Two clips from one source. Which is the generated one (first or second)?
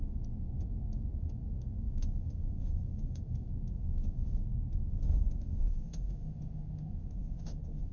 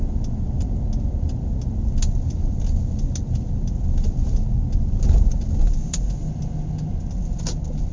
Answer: first